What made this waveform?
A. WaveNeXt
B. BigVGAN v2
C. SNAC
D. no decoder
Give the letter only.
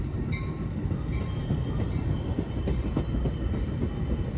D